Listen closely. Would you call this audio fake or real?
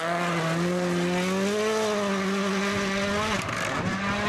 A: real